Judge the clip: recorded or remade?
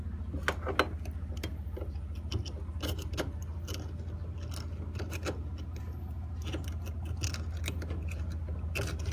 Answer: recorded